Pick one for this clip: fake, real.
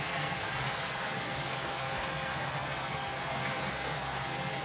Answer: fake